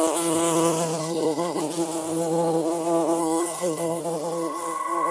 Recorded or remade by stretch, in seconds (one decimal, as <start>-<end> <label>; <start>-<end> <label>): 0.0-1.0 recorded; 1.0-1.6 remade; 1.6-3.2 recorded; 3.2-4.0 remade; 4.0-5.1 recorded